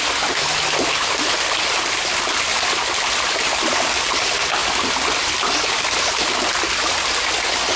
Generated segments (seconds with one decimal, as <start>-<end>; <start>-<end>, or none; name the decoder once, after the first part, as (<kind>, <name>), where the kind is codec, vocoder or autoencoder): none